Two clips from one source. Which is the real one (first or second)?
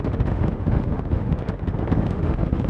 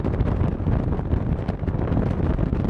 second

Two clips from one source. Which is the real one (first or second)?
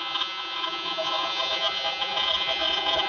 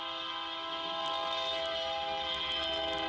second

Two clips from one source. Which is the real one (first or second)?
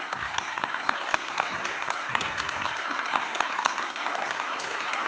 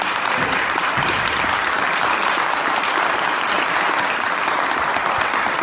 second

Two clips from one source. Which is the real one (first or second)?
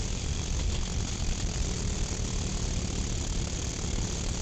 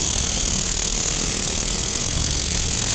first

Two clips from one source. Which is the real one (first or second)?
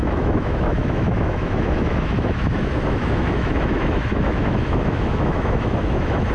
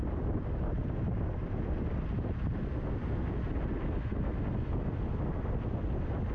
second